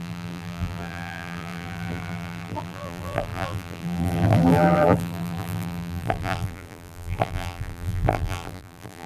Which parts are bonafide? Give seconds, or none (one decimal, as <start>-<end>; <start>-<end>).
none